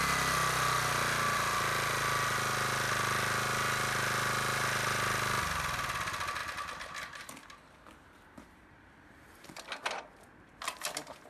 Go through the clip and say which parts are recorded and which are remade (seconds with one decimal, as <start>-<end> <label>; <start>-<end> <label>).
0.0-11.3 recorded